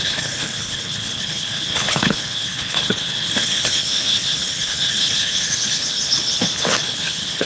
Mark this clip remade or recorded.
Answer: remade